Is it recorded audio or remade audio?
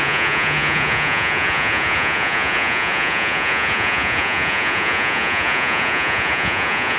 remade